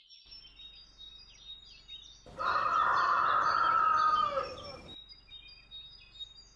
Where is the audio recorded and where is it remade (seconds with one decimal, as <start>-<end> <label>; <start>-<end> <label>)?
0.0-6.6 recorded